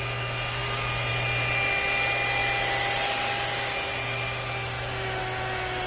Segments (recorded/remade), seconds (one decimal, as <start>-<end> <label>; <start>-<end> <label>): 0.0-5.9 recorded

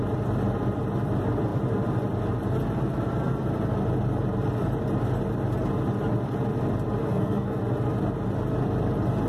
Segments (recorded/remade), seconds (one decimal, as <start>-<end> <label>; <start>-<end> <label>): 0.0-7.0 recorded; 7.0-7.6 remade; 7.6-9.3 recorded

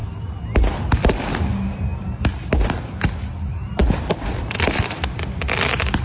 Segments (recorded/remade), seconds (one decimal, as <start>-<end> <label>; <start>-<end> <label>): 0.0-1.4 recorded; 1.4-1.9 remade; 1.9-3.4 recorded; 3.4-3.8 remade; 3.8-6.0 recorded

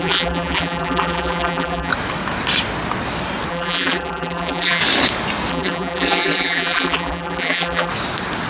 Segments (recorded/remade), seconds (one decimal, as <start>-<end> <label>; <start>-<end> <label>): 0.0-1.9 remade; 1.9-3.5 recorded; 3.5-4.8 remade; 4.8-5.5 recorded; 5.5-7.9 remade; 7.9-8.5 recorded

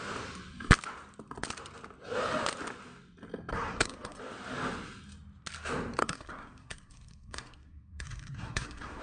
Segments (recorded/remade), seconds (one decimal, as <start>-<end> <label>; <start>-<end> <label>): 0.0-3.5 recorded; 3.5-4.2 remade; 4.2-6.0 recorded; 6.0-9.0 remade

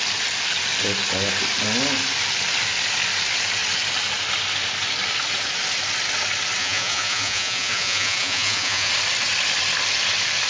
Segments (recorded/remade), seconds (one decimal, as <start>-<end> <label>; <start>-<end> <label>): 0.0-6.6 recorded; 6.6-8.9 remade; 8.9-10.5 recorded

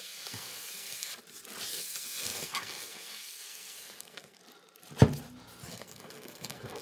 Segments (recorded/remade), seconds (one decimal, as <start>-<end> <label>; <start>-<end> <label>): 0.0-1.1 remade; 1.1-1.7 recorded; 1.7-4.4 remade; 4.4-5.7 recorded; 5.7-6.8 remade